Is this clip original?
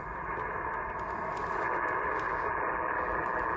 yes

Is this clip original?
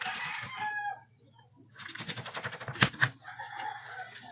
yes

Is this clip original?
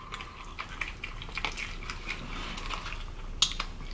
yes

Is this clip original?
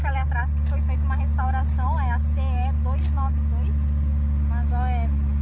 yes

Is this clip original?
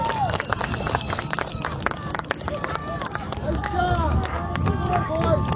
no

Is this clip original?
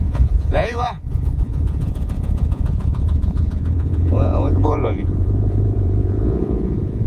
no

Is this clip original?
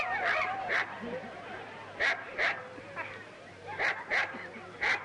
no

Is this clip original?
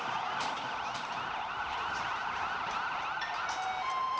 no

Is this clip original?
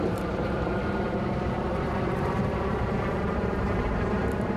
no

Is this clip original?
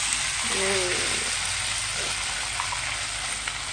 yes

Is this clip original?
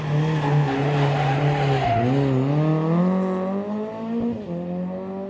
yes